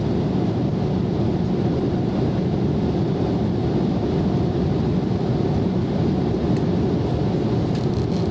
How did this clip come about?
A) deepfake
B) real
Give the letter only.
B